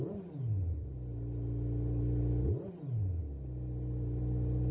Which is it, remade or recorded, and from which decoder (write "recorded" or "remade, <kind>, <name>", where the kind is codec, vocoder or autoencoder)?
recorded